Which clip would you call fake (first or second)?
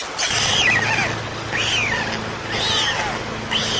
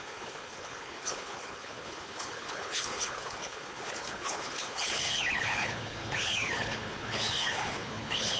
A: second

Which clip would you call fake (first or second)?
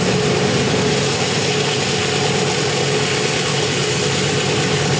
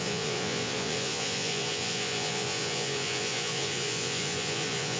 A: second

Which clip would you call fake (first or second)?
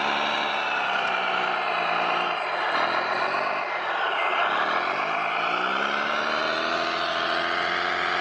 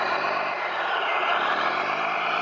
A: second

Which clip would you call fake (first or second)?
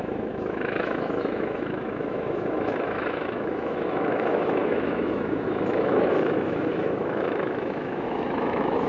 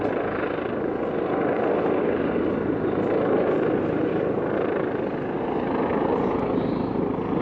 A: first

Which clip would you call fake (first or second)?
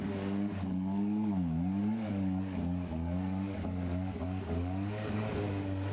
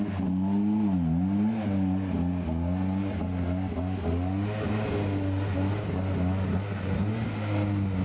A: first